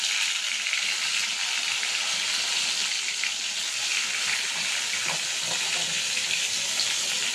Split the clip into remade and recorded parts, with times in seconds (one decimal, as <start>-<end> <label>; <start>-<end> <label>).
0.0-7.3 recorded